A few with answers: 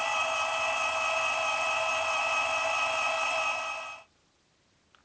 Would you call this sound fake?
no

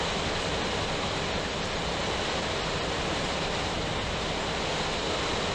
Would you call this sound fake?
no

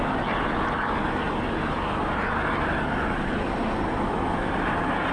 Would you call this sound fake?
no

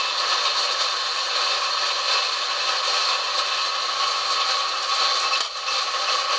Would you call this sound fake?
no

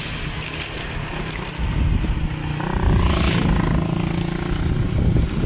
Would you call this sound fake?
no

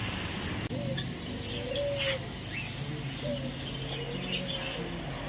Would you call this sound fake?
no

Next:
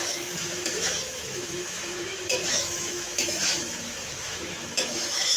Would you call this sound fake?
yes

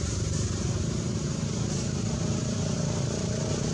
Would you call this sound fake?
yes